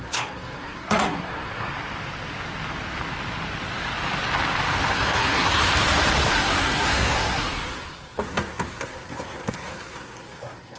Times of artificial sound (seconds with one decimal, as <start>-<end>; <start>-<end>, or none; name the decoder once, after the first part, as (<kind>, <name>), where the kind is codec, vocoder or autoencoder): 0.0-1.7 (codec, SNAC); 4.9-5.6; 6.3-10.8